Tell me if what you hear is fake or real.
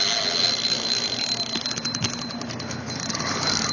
real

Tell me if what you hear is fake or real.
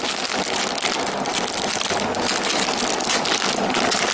real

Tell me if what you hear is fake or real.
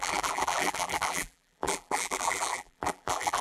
fake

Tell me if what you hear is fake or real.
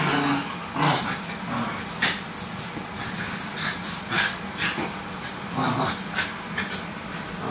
real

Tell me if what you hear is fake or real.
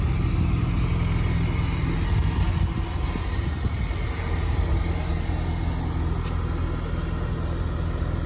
real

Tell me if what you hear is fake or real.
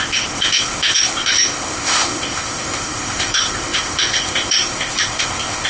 fake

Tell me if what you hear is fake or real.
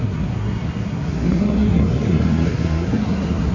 fake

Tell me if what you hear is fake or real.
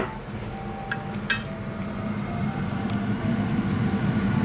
real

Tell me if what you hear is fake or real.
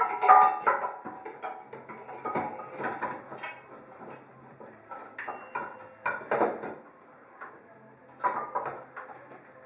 real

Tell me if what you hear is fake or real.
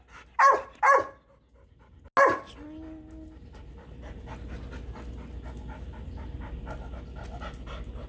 real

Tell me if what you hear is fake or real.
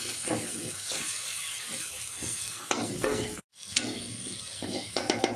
fake